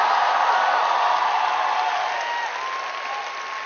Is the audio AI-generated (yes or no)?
no